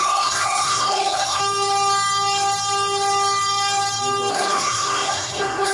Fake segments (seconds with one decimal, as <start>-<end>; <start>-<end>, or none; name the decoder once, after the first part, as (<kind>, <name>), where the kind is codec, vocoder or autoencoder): 0.0-1.4 (codec, SNAC); 4.3-5.7